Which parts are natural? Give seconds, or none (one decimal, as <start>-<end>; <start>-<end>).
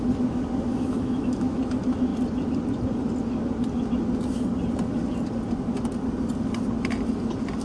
0.0-0.7; 1.6-7.6